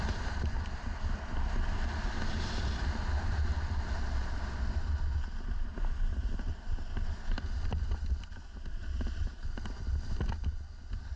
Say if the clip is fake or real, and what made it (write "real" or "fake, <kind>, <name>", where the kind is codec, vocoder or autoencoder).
real